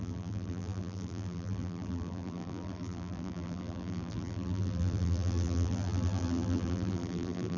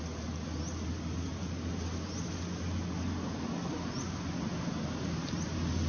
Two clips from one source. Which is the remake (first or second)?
first